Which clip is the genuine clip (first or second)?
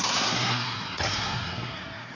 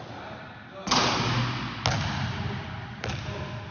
second